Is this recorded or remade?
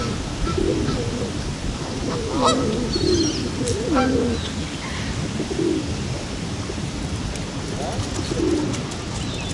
recorded